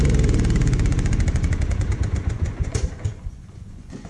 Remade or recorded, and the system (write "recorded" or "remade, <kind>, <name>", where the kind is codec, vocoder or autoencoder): remade, vocoder, Vocos